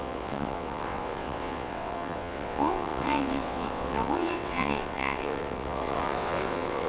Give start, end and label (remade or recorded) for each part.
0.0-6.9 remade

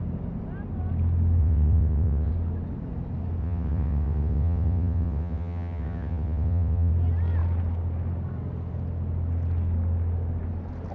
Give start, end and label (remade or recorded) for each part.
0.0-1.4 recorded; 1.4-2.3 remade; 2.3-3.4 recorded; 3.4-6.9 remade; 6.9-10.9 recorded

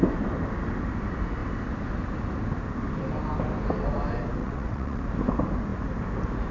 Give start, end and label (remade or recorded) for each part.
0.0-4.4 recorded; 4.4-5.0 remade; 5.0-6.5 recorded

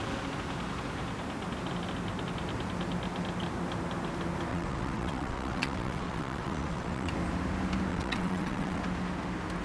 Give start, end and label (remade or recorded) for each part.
0.0-4.5 recorded; 4.5-7.1 remade; 7.1-7.9 recorded; 7.9-8.8 remade; 8.8-9.6 recorded